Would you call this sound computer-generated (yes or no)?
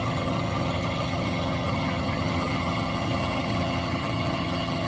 yes